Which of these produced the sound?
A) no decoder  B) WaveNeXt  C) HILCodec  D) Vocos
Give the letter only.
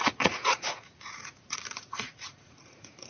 D